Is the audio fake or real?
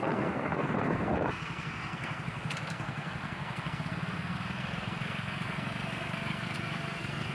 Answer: fake